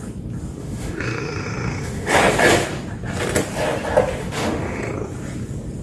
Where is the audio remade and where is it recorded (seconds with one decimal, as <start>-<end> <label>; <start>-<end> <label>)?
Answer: 0.0-0.6 recorded; 0.6-2.2 remade; 2.2-4.2 recorded; 4.2-4.8 remade; 4.8-5.8 recorded